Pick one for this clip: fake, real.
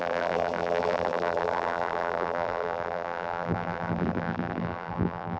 fake